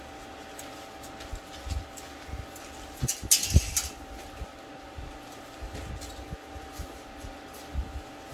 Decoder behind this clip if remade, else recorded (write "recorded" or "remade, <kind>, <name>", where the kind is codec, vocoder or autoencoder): recorded